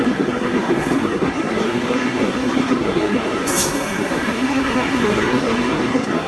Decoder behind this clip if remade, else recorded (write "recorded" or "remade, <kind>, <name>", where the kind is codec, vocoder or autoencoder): remade, codec, SNAC